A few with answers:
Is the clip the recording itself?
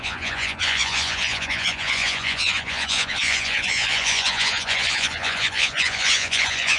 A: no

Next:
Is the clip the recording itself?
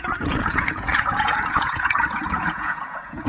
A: no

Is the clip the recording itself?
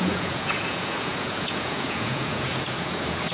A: no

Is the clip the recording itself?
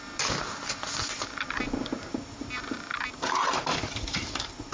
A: yes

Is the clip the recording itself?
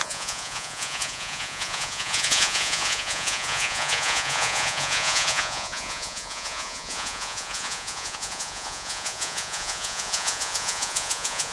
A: no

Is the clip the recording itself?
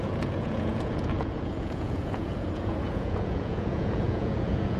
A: no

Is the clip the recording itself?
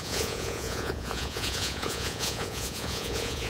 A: no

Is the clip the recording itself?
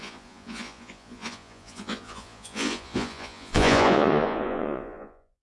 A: no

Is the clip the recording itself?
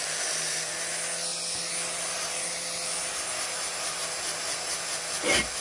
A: yes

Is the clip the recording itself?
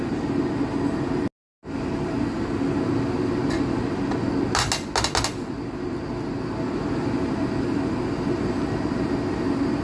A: yes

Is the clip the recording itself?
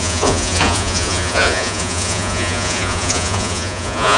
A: no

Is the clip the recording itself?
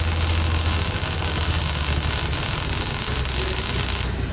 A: yes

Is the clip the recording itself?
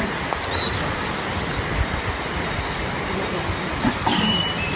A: yes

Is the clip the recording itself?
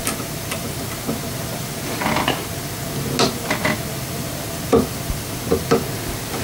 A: yes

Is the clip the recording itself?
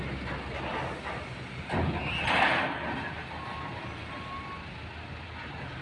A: yes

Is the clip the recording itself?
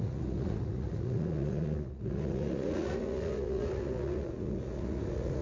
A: no